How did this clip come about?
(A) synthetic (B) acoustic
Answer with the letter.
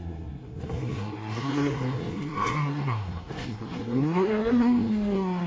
A